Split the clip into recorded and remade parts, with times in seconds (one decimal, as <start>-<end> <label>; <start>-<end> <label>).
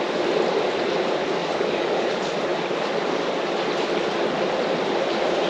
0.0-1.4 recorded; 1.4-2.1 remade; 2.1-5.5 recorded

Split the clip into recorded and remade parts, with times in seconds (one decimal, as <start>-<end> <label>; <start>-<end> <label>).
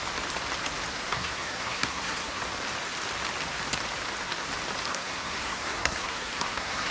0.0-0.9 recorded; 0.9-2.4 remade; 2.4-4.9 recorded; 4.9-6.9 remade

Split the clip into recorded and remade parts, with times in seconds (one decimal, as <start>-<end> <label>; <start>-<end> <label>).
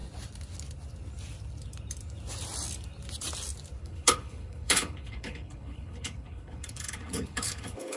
0.0-3.8 recorded; 3.8-8.0 remade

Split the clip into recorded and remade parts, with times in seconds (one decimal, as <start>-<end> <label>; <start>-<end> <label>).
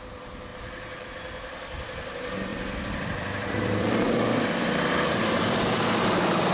0.0-0.5 recorded; 0.5-1.1 remade; 1.1-2.5 recorded; 2.5-6.5 remade